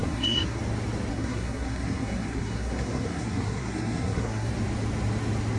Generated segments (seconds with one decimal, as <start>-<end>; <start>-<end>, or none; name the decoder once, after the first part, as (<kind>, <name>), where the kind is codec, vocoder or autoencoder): 0.0-0.6 (codec, SNAC); 1.1-4.5